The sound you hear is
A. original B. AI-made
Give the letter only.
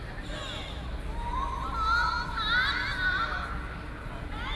A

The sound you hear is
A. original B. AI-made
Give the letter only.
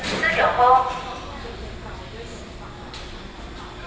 A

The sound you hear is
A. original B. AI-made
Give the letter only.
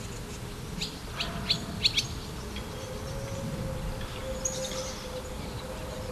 A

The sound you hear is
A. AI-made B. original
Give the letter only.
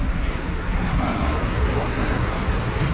A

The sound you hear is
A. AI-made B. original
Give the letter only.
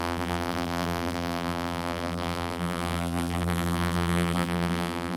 A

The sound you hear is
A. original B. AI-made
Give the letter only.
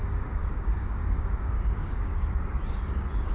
B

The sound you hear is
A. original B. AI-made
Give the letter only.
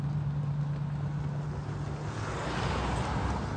A